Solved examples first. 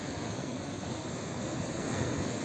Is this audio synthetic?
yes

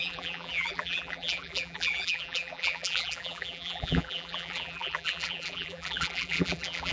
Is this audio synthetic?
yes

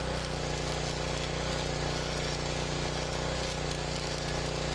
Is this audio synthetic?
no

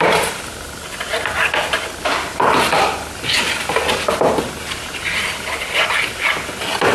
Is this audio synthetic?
no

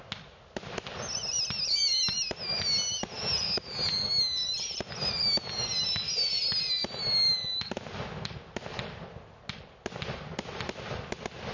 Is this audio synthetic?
no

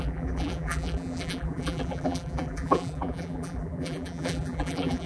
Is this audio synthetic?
yes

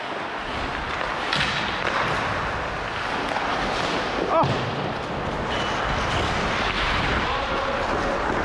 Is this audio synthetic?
no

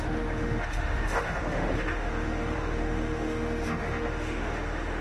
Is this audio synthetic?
yes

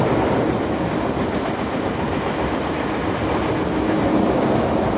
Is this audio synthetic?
no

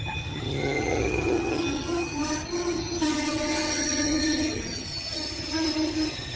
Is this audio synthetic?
yes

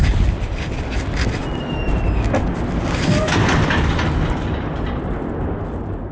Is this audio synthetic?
no